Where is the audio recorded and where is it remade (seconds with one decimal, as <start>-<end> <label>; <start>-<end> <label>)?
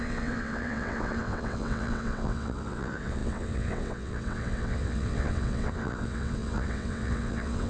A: 0.0-7.7 remade